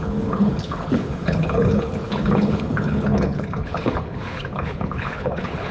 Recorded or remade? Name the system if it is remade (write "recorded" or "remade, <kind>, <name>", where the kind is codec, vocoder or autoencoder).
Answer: remade, codec, HILCodec